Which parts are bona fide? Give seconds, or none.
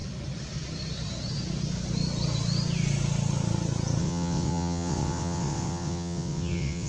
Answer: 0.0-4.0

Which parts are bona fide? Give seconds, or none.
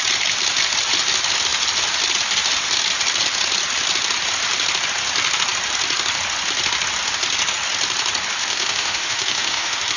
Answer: 0.0-8.4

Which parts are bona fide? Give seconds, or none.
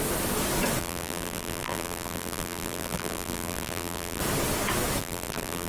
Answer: 0.0-0.8; 4.2-5.0